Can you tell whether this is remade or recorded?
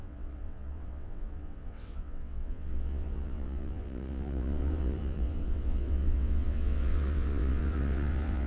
remade